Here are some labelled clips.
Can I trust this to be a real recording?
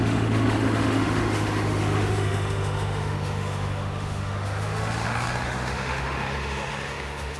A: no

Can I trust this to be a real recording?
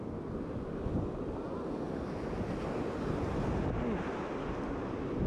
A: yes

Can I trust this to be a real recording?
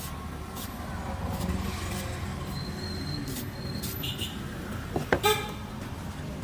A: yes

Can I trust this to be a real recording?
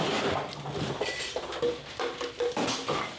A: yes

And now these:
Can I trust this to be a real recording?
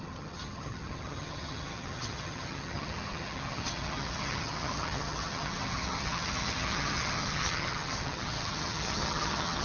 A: no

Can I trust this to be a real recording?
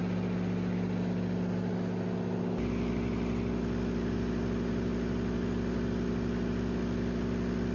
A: yes